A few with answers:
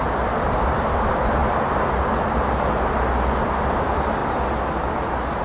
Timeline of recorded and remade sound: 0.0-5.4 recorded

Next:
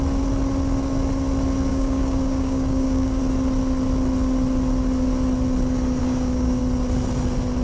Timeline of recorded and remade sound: 0.0-1.7 recorded; 1.7-3.2 remade; 3.2-6.0 recorded; 6.0-6.6 remade; 6.6-7.6 recorded

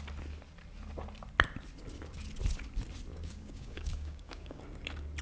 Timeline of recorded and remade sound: 0.0-3.1 recorded; 3.1-4.6 remade; 4.6-5.2 recorded

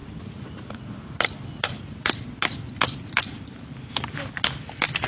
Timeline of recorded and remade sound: 0.0-5.1 recorded

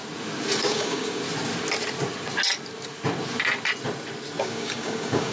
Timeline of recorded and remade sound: 0.0-0.6 recorded; 0.6-1.2 remade; 1.2-4.4 recorded; 4.4-5.3 remade

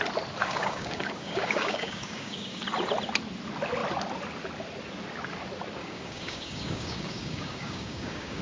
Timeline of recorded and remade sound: 0.0-0.4 recorded; 0.4-2.6 remade; 2.6-5.8 recorded; 5.8-8.4 remade